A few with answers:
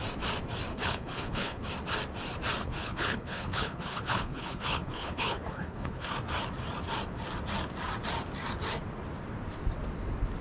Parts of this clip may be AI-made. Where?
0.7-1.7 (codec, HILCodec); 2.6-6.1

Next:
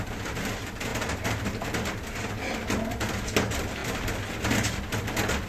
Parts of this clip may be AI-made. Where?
none

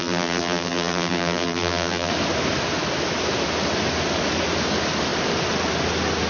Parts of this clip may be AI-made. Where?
0.0-2.1 (vocoder, BigVGAN v2)

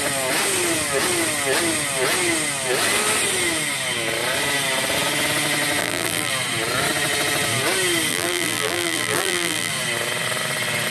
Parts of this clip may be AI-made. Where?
5.8-6.3 (vocoder, BigVGAN v2); 8.1-9.7

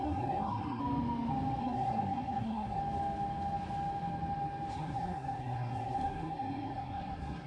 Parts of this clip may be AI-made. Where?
0.0-0.8 (codec, SNAC); 1.6-2.8; 4.7-7.5

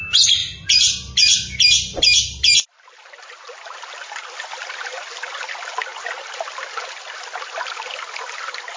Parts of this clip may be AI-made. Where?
none

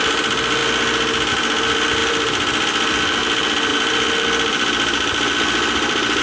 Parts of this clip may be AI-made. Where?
2.0-3.2 (vocoder, BigVGAN v2); 3.7-6.2